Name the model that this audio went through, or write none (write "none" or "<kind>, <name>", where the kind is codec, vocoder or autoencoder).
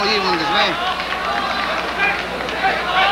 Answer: none